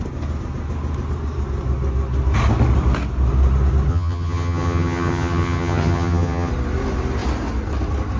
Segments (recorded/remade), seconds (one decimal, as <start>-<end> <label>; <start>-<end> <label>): 0.0-3.9 recorded; 3.9-6.5 remade; 6.5-8.2 recorded